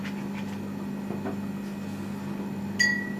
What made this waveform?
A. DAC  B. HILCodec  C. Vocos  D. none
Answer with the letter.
D